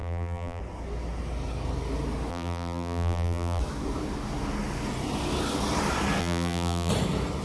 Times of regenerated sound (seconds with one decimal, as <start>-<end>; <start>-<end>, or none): 0.0-0.6; 2.3-3.6; 6.2-6.9